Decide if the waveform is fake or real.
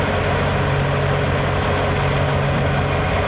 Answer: real